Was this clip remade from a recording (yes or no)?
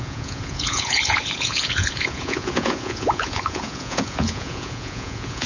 yes